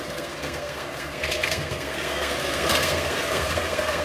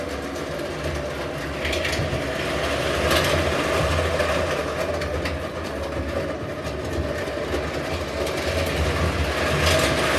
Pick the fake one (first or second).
first